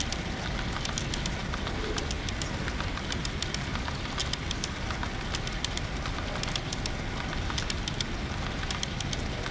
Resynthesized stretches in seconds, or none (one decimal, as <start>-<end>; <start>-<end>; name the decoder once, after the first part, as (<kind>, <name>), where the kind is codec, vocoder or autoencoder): none